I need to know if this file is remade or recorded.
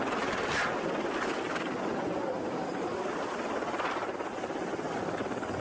recorded